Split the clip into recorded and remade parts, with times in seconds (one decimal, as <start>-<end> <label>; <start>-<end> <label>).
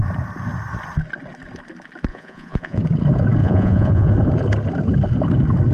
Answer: 0.0-2.1 recorded; 2.1-2.8 remade; 2.8-3.4 recorded; 3.4-4.1 remade; 4.1-5.7 recorded